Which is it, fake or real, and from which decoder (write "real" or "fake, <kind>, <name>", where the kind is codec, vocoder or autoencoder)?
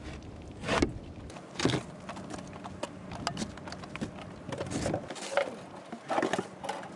real